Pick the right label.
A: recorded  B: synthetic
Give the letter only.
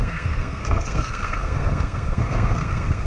B